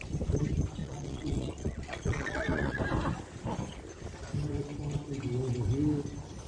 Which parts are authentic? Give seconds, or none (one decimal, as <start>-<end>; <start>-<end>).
0.0-0.8; 2.8-6.5